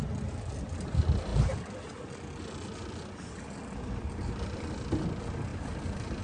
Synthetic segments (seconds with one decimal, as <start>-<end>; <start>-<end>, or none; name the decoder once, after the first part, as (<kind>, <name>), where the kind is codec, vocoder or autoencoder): none